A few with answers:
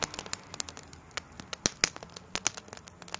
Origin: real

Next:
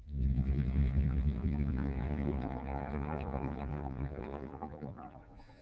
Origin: fake